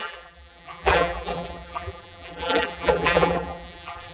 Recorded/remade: remade